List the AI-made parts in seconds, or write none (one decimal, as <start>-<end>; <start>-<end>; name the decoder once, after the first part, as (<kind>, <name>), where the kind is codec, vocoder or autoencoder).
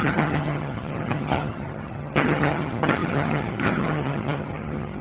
0.0-5.0 (vocoder, HiFi-GAN)